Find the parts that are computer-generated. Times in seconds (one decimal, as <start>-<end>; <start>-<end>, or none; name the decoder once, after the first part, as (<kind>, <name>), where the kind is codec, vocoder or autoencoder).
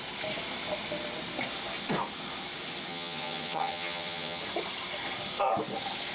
2.9-4.4 (vocoder, HiFi-GAN)